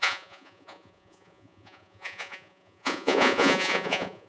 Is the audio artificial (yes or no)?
yes